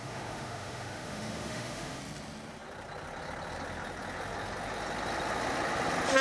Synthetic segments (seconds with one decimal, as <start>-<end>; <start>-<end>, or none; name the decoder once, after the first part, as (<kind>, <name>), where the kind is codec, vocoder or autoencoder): 0.0-2.0 (autoencoder, DAC-VAE)